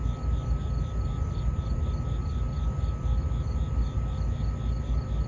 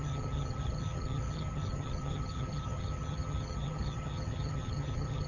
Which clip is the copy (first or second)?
second